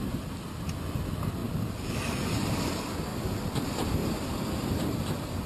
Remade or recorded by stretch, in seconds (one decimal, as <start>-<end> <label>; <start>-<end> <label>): 0.0-3.1 recorded; 3.1-3.6 remade; 3.6-4.0 recorded; 4.0-4.8 remade; 4.8-5.5 recorded